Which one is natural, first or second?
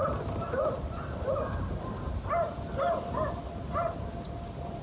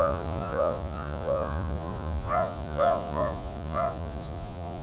first